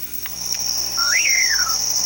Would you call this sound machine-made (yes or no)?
yes